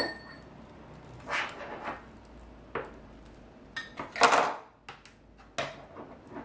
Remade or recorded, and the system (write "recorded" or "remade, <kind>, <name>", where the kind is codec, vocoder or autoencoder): recorded